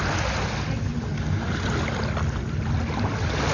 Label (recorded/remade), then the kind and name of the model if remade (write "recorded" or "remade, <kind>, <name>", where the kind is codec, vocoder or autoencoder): recorded